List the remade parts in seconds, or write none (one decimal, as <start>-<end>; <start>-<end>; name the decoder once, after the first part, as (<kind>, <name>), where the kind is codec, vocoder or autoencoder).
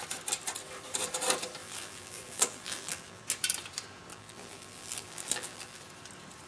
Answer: 1.6-3.2 (vocoder, BigVGAN v2); 4.1-5.8